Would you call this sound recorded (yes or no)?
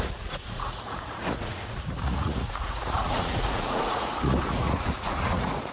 no